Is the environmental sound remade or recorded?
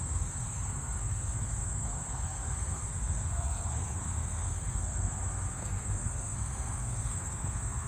remade